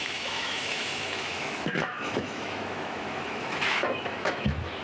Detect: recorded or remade remade